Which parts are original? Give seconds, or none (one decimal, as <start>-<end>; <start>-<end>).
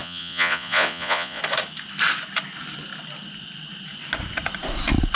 1.4-5.2